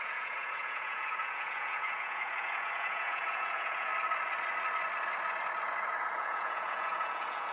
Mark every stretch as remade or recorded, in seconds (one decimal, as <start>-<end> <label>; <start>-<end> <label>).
0.0-3.9 remade; 3.9-6.1 recorded; 6.1-7.5 remade